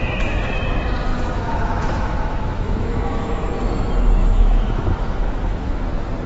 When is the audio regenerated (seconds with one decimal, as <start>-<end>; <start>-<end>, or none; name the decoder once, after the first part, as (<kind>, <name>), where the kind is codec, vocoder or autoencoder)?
1.1-3.6 (autoencoder, DAC-VAE); 4.2-5.8